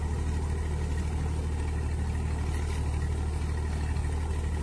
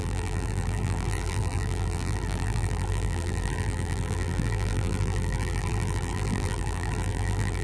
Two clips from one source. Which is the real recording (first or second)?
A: first